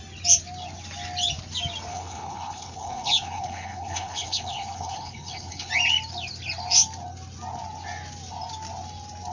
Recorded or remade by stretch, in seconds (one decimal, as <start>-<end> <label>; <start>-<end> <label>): 0.0-1.9 recorded; 1.9-5.7 remade; 5.7-9.3 recorded